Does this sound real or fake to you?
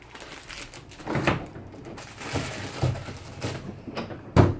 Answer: real